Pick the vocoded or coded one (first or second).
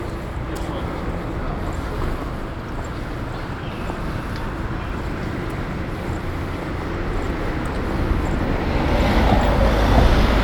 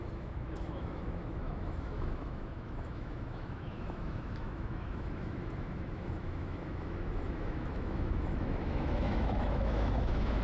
second